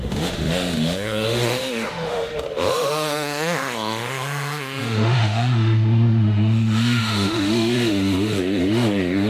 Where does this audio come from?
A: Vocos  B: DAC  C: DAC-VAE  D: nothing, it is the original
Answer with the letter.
C